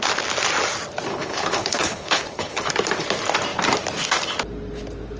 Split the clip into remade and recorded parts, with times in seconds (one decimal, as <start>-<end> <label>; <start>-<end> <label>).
0.0-1.1 recorded; 1.1-2.7 remade; 2.7-5.2 recorded